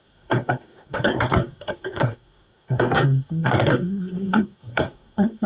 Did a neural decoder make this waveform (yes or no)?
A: yes